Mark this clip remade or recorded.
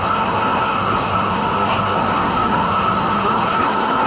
remade